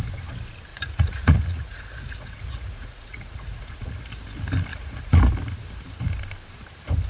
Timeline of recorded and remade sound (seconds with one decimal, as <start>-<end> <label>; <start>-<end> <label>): 0.0-0.7 recorded; 0.7-4.0 remade; 4.0-4.7 recorded; 4.7-5.3 remade; 5.3-7.1 recorded